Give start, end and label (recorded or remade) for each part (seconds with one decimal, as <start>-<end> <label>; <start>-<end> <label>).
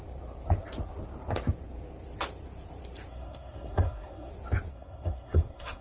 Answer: 0.0-3.1 recorded; 3.1-4.3 remade; 4.3-4.7 recorded; 4.7-5.8 remade